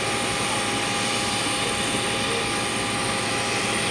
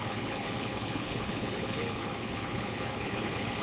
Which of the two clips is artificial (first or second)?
second